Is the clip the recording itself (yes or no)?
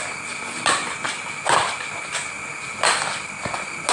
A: yes